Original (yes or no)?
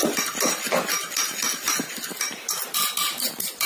yes